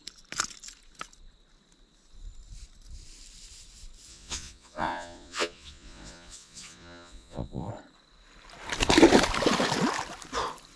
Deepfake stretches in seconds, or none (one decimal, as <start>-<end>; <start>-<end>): 4.1-7.7